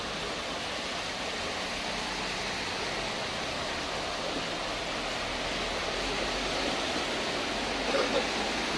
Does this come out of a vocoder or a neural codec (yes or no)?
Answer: no